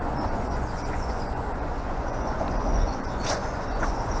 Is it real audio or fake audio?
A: fake